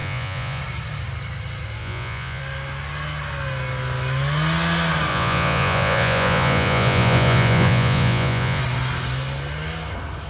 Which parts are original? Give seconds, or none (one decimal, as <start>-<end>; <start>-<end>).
0.6-1.8; 2.4-5.1; 8.6-10.3